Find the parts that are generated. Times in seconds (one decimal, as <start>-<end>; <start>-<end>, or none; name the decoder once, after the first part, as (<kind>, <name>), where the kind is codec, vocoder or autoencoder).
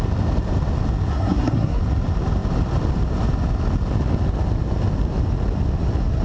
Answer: 1.1-1.8 (codec, SNAC)